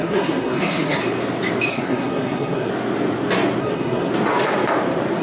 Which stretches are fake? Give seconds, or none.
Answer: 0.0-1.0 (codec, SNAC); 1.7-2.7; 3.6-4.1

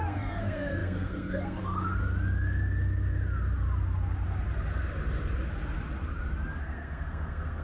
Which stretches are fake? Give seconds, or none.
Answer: 0.0-2.0 (codec, SNAC); 6.6-7.6

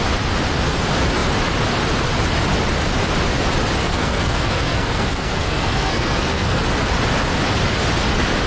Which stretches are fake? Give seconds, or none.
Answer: 3.8-6.6 (codec, SNAC)

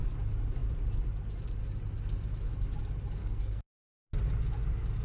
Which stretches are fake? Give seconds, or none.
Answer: 3.2-3.7 (codec, SNAC)

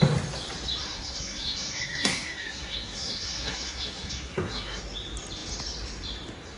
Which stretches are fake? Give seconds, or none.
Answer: 0.8-4.8 (codec, SNAC)

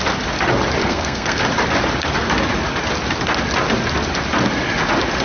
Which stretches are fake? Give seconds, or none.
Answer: 0.8-1.4 (codec, SNAC)

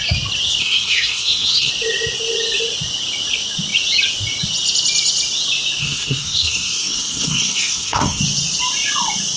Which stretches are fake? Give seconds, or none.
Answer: 0.6-1.7 (codec, SNAC); 5.8-8.2